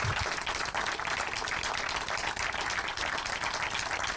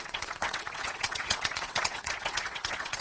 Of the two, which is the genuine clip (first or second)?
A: first